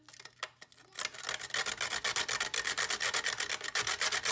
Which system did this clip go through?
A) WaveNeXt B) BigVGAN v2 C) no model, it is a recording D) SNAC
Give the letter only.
C